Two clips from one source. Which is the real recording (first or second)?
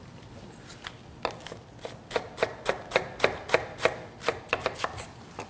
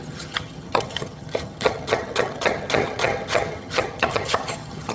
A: first